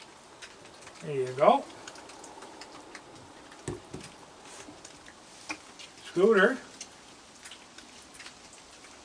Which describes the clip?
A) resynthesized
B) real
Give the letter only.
B